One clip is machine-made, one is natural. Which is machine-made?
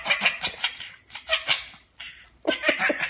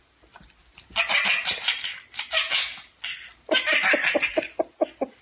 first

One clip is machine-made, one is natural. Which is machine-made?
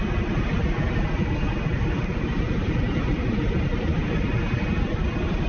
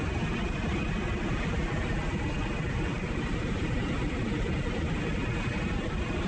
second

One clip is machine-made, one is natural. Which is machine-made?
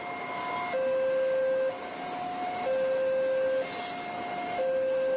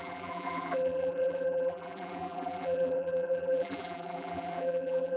second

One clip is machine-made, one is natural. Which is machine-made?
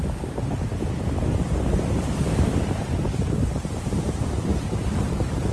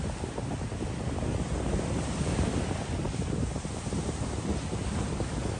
first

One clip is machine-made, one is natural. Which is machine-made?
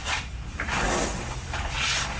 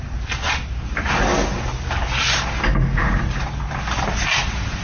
first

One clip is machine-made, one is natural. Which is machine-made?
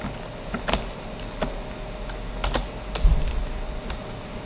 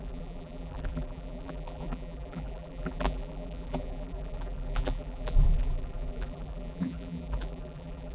second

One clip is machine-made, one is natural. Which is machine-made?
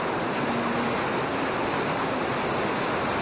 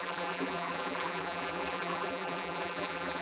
second